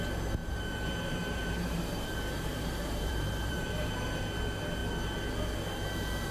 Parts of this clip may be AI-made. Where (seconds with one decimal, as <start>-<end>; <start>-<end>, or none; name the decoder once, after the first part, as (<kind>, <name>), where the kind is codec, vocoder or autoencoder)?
0.4-4.2 (vocoder, BigVGAN v2)